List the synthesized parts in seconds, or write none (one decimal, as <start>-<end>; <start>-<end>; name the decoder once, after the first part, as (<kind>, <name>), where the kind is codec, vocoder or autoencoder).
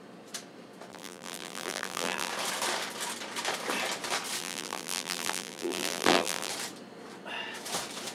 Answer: 0.9-2.3 (vocoder, BigVGAN v2); 4.4-6.5